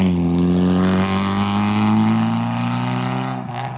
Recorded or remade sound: recorded